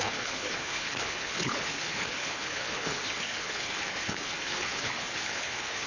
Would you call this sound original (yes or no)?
no